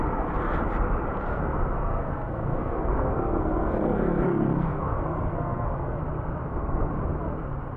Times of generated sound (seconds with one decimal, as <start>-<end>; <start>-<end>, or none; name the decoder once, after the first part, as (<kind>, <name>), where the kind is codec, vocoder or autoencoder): 1.3-6.0 (codec, SNAC); 6.4-6.9